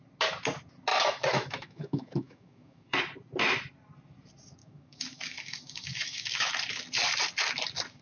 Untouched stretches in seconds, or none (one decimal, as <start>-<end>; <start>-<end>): 0.0-0.9; 3.0-4.6; 6.5-8.0